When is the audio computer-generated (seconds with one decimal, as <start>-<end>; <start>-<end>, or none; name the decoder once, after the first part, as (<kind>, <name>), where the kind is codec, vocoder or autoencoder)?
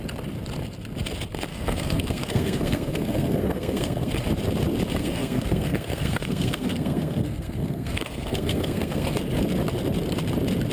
1.5-4.1 (codec, SNAC); 5.0-9.2